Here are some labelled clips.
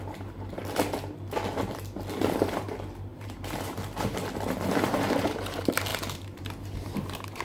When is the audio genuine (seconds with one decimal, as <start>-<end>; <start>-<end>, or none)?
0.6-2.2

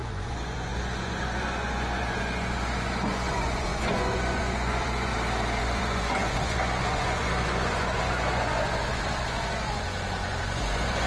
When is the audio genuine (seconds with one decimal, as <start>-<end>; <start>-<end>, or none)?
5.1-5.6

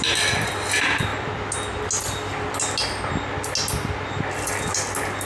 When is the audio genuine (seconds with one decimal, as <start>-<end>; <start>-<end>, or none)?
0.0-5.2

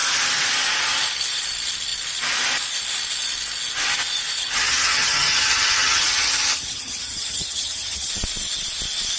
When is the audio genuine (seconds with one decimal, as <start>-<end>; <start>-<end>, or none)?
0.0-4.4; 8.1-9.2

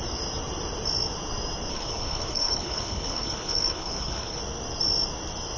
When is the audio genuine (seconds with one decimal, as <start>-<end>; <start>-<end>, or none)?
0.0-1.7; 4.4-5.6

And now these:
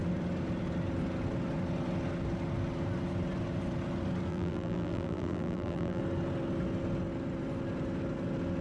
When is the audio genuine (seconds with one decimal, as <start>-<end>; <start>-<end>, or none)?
0.0-4.3; 6.0-8.6

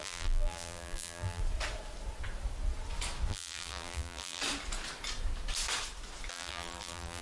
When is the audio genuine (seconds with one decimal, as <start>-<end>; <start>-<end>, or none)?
1.4-3.3; 4.4-6.3

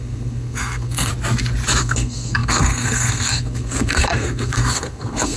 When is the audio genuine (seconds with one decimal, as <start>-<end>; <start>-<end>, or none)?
1.1-1.8